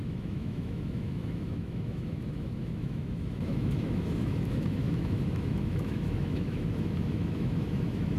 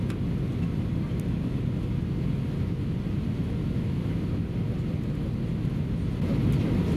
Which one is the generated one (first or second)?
first